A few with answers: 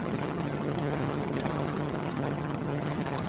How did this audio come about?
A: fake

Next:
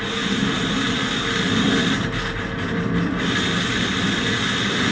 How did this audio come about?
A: real